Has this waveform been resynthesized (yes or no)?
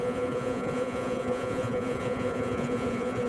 yes